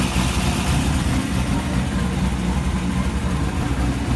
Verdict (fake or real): real